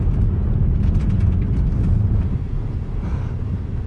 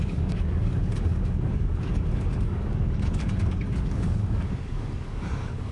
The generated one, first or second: second